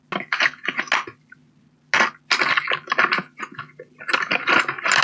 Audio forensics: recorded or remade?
recorded